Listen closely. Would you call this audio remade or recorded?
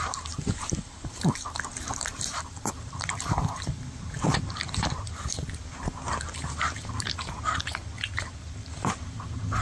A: remade